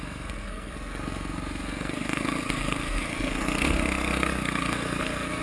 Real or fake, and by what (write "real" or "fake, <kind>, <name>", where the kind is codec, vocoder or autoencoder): fake, codec, SNAC